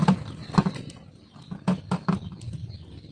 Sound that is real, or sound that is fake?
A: real